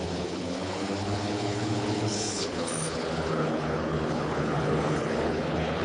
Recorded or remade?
remade